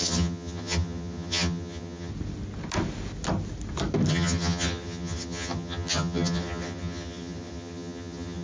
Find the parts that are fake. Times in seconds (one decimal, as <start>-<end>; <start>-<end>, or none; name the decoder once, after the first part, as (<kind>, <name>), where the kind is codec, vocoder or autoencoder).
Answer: 0.0-2.1 (vocoder, HiFi-GAN); 4.1-8.4